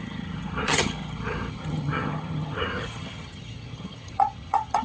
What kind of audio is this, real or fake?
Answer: fake